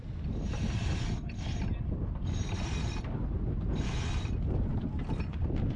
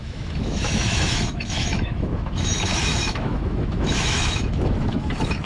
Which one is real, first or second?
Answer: first